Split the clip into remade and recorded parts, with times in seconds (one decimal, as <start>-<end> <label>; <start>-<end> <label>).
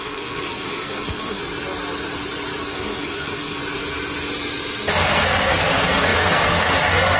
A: 0.0-1.4 remade; 1.4-2.6 recorded; 2.6-3.6 remade; 3.6-4.9 recorded; 4.9-7.2 remade